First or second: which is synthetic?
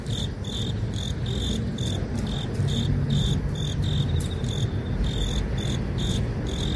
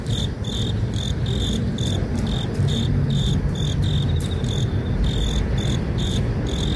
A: second